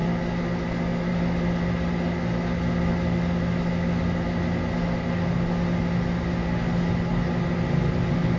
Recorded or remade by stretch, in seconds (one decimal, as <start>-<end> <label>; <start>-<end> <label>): 0.0-8.4 recorded